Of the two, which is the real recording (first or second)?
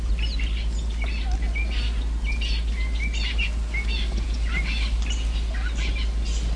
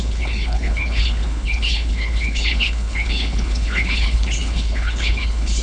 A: first